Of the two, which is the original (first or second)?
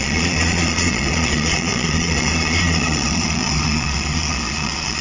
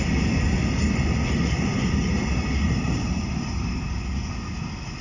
second